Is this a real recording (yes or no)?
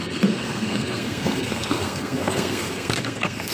no